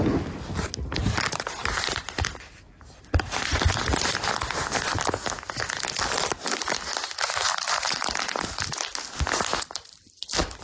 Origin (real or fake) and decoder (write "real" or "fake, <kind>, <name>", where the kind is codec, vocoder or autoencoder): real